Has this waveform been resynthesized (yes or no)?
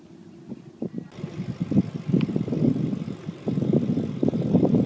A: no